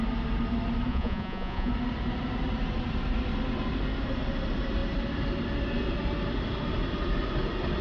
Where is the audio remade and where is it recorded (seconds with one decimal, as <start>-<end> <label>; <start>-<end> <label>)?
0.0-0.9 recorded; 0.9-1.7 remade; 1.7-7.8 recorded

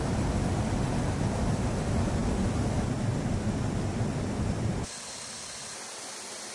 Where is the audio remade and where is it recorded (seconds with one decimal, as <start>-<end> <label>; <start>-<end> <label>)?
0.0-6.5 recorded

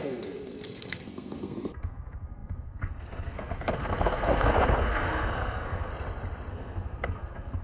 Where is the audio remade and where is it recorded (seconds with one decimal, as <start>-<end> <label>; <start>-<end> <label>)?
0.0-5.9 remade; 5.9-6.5 recorded; 6.5-7.6 remade

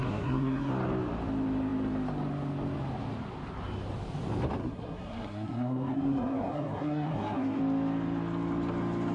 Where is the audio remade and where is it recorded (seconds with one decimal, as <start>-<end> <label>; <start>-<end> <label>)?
0.0-0.7 remade; 0.7-4.6 recorded; 4.6-7.6 remade; 7.6-9.1 recorded

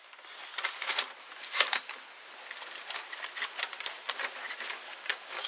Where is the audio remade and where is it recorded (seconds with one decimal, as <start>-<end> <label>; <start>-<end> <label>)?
0.0-5.5 recorded